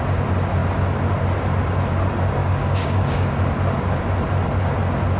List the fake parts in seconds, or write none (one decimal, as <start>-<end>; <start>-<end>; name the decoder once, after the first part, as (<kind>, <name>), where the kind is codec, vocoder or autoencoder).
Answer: 2.4-3.4 (codec, DAC)